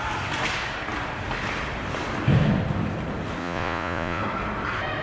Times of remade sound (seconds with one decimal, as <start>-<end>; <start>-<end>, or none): 3.4-4.2

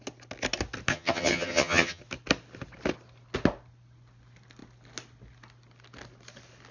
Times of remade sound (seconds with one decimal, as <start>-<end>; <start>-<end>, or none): 0.9-2.0

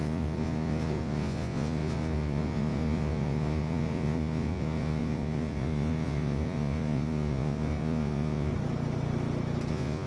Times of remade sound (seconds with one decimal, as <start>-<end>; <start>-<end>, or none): 0.0-8.5; 9.7-10.1

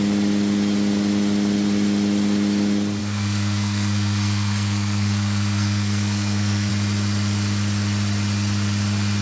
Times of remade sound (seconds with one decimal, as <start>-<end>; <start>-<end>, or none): 3.0-6.7

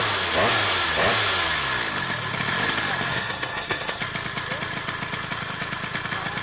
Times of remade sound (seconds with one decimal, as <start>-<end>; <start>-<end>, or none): 3.1-4.0

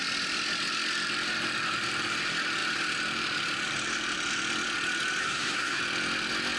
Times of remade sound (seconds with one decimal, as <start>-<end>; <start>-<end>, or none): 5.2-5.8